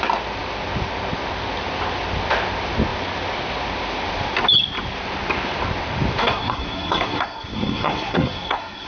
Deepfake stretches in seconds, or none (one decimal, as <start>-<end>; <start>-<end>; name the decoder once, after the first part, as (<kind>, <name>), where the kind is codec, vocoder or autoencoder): 6.2-8.9 (codec, SNAC)